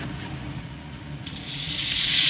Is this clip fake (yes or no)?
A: yes